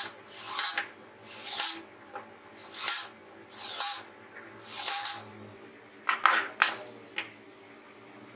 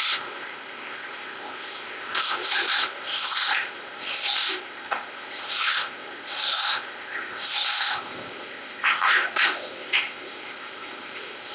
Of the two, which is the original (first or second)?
first